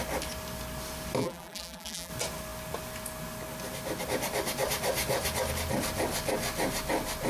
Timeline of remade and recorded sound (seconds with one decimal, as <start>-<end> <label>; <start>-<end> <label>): 0.0-1.2 recorded; 1.2-2.1 remade; 2.1-7.3 recorded